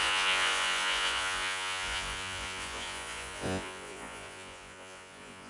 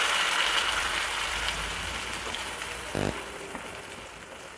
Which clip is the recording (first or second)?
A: second